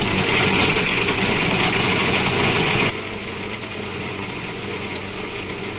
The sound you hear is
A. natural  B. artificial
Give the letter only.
B